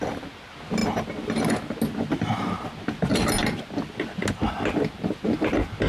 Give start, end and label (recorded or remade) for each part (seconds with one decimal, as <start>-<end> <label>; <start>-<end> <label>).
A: 0.0-5.9 recorded